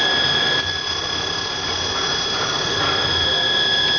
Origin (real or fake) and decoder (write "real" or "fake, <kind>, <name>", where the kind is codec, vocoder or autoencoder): real